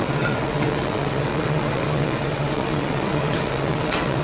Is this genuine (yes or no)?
no